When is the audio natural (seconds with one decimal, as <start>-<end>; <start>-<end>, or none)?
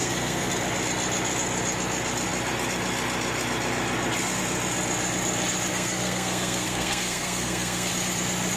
0.5-5.7; 7.9-8.6